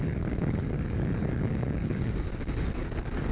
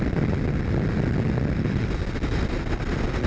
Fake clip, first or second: first